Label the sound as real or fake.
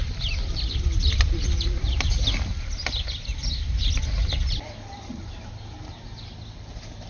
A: real